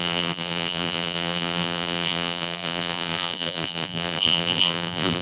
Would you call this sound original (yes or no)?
no